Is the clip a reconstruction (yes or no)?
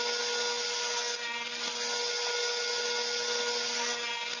no